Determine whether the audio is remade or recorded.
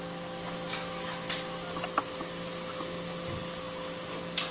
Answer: recorded